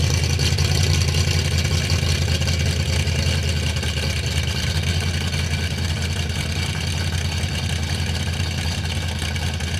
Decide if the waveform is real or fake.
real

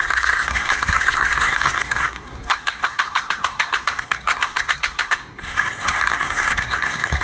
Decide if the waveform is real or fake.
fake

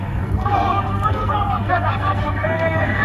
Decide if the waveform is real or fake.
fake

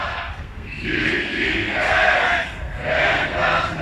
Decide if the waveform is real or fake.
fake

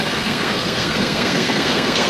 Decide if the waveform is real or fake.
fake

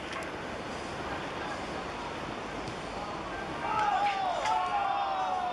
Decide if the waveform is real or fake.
real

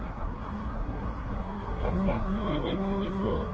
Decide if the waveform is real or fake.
fake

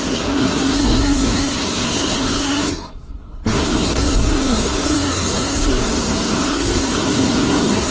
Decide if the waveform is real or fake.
fake